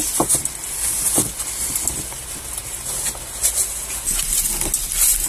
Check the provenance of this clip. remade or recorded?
recorded